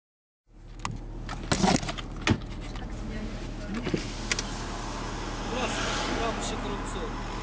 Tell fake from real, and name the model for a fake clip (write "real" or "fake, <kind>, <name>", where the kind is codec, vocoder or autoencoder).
real